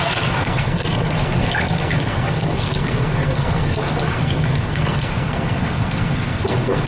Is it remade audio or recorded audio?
remade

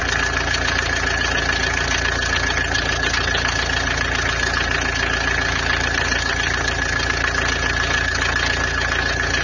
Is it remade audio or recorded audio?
recorded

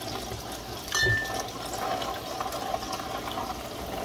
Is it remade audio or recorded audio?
recorded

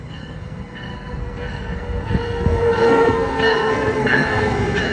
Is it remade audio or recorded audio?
remade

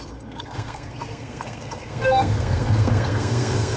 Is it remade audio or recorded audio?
remade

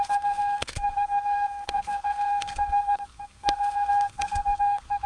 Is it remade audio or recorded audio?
remade